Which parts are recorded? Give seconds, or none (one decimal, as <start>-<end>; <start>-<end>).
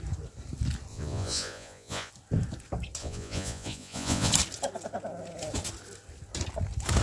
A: 0.0-0.9; 2.1-3.0; 4.3-7.0